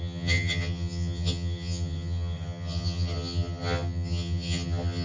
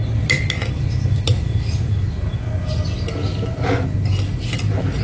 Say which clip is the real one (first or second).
second